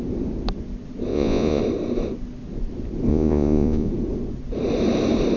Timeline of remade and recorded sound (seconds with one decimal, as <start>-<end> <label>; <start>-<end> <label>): 0.0-1.1 recorded; 1.1-1.6 remade; 1.6-3.1 recorded; 3.1-3.9 remade; 3.9-5.4 recorded